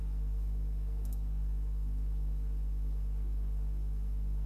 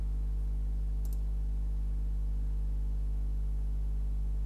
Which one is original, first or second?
second